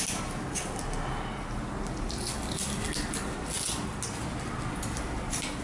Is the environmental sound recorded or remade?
recorded